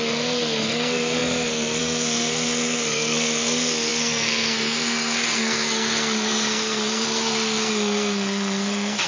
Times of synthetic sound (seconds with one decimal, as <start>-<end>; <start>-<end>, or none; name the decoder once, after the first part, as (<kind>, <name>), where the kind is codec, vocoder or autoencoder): 0.0-9.1 (codec, SNAC)